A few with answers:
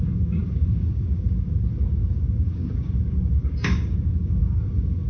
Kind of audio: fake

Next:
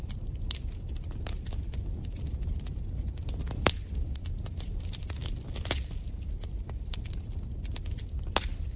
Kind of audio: real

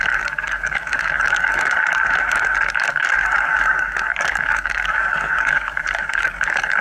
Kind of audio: fake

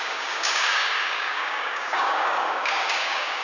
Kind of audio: fake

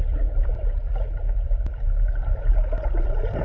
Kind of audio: real